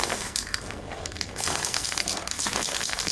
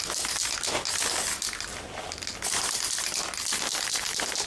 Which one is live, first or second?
second